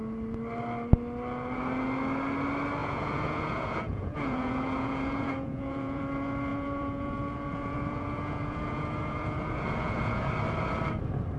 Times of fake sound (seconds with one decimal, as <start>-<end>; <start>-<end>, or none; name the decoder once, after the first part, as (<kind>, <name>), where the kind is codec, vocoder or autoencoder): 2.8-6.0 (vocoder, Vocos); 6.5-10.3